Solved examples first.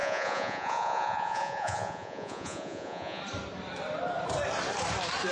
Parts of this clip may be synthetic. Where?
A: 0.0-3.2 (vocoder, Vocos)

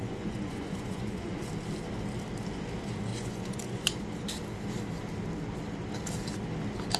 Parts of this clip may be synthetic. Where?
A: 0.0-1.5 (vocoder, Vocos); 3.1-4.0

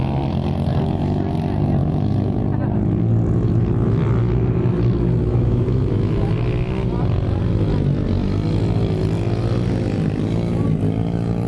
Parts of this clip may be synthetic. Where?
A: 0.7-1.2 (autoencoder, DAC-VAE); 1.8-2.4; 5.2-6.3

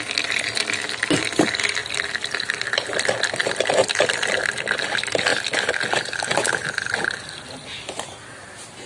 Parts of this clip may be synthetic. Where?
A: 1.8-4.7 (vocoder, BigVGAN v2)

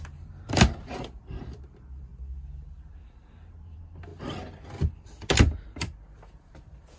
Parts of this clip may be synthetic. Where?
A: 0.0-2.1 (vocoder, BigVGAN v2); 2.9-4.1; 6.4-7.0

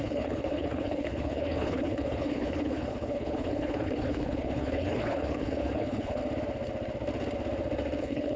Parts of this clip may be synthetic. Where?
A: 0.0-6.2 (codec, HILCodec); 8.0-8.4

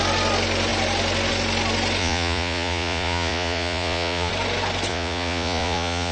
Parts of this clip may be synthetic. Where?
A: 2.0-4.3 (vocoder, Vocos); 4.9-6.1